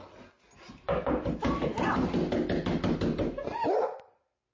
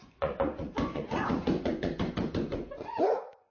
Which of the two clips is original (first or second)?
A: first